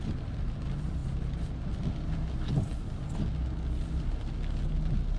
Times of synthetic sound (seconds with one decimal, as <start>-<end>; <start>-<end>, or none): none